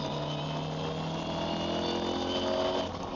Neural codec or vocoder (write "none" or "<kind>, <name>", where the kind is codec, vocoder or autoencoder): none